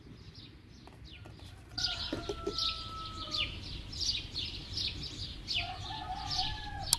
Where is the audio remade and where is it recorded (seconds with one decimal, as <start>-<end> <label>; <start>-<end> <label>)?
0.0-7.0 recorded

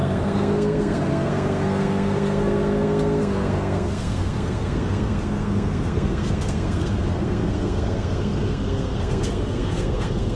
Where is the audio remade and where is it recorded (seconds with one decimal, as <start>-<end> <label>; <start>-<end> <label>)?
0.0-10.4 remade

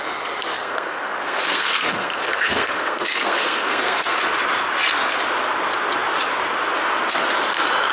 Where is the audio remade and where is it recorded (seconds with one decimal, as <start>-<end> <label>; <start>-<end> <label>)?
0.0-0.5 recorded; 0.5-4.2 remade; 4.2-7.9 recorded